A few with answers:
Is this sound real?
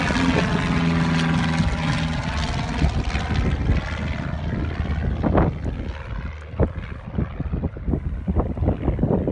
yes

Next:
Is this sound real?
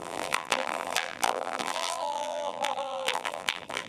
no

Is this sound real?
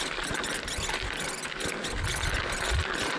yes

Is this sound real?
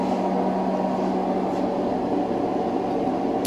yes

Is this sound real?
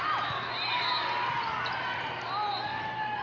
yes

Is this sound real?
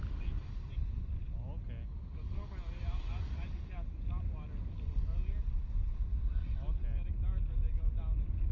yes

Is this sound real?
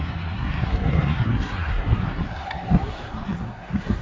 no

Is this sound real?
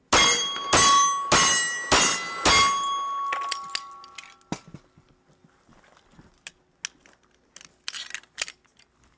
yes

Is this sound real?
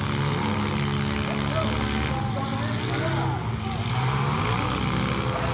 yes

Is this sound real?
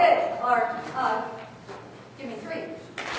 yes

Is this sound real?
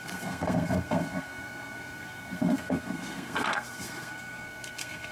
no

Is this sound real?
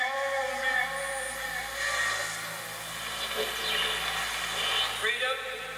yes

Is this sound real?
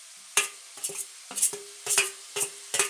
no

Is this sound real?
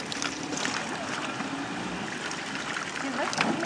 yes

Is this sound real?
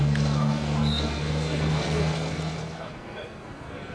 no